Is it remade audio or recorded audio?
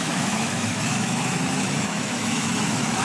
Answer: remade